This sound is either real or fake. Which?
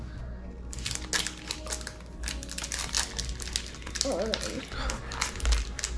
real